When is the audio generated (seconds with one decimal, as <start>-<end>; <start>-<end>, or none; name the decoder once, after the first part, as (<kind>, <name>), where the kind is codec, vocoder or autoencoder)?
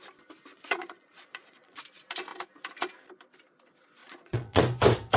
0.5-1.8 (vocoder, Vocos); 4.0-4.6